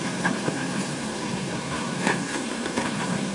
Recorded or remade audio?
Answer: remade